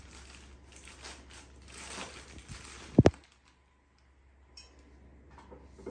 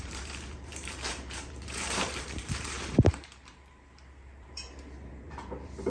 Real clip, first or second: first